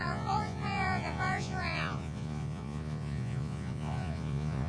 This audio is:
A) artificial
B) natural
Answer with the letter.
A